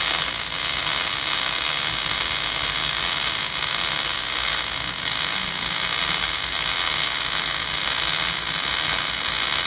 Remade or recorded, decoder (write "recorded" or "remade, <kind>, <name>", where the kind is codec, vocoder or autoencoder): recorded